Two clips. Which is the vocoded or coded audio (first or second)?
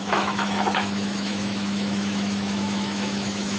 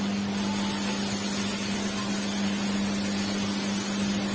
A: first